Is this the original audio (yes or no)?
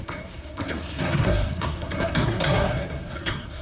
no